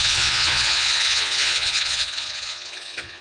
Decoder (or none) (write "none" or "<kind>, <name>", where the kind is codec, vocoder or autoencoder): vocoder, Vocos